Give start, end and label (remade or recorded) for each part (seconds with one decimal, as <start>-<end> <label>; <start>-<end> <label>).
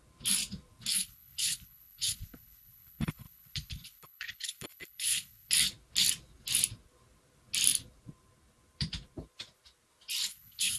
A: 0.0-0.9 recorded; 0.9-5.5 remade; 5.5-10.3 recorded; 10.3-10.8 remade